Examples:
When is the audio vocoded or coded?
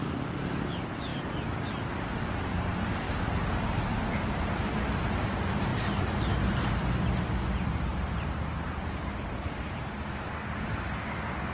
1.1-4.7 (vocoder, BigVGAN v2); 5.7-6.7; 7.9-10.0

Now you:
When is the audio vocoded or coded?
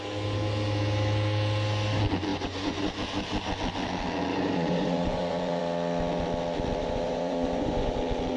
2.3-2.9 (vocoder, Vocos); 4.3-5.6; 6.8-8.0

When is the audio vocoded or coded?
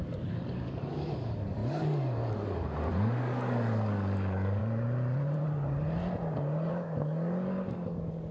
0.0-4.6 (codec, DAC); 6.7-8.3